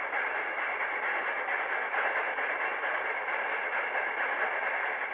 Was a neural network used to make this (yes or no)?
no